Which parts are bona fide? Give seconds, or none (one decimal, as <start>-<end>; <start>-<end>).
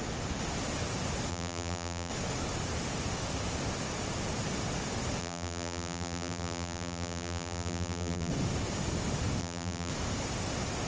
0.0-1.3; 2.1-5.2; 8.3-9.4; 9.9-10.9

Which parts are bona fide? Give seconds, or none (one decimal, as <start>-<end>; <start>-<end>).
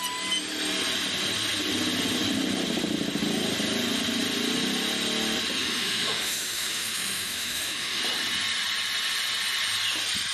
0.0-5.6; 8.0-10.3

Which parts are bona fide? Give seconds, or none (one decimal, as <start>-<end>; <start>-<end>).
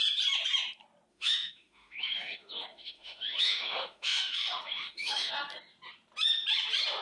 0.0-1.1; 5.3-7.0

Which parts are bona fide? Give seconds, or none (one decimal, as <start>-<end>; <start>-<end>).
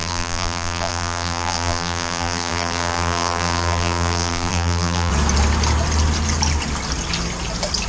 5.1-7.9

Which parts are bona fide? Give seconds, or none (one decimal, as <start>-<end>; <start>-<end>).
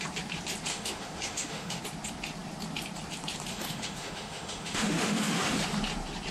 0.0-0.7; 1.8-3.5; 5.5-6.3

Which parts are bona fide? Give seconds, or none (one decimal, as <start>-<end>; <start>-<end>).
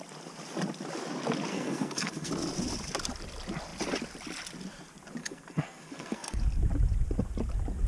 0.0-1.5; 2.3-5.2; 6.4-7.9